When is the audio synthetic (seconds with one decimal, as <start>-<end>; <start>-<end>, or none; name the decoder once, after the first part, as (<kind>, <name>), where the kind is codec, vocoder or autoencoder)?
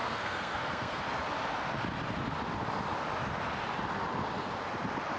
0.0-1.0 (codec, SNAC)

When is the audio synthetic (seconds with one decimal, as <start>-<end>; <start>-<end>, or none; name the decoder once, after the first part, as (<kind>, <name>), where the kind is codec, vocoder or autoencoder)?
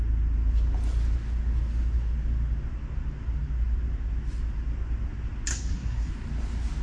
5.5-6.1 (codec, SNAC)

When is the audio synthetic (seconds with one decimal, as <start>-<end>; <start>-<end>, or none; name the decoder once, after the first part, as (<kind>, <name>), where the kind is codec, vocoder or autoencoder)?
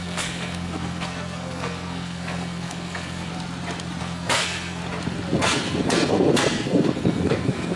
0.0-3.3 (codec, SNAC); 4.0-4.8; 5.4-7.8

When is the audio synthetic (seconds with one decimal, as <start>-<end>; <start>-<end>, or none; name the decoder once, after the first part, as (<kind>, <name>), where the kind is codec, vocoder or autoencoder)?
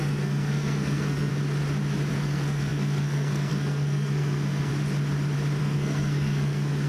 0.0-1.3 (codec, SNAC); 2.1-4.7; 5.6-6.9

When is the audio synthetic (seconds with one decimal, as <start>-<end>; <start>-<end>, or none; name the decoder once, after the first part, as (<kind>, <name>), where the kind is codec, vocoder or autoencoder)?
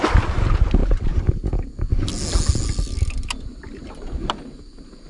none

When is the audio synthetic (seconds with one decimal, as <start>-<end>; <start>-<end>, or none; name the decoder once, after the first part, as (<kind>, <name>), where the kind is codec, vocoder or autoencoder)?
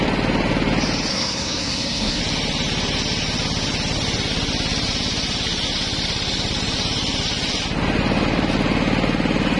1.1-2.2 (codec, SNAC)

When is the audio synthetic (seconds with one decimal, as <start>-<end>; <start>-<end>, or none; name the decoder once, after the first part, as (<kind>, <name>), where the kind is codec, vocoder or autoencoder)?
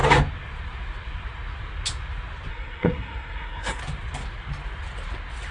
2.5-3.8 (codec, SNAC)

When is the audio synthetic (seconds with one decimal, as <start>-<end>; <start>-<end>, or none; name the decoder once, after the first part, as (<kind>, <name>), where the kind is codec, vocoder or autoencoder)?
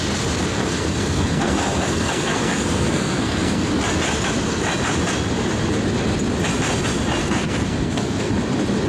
0.5-3.7 (codec, SNAC); 7.2-8.3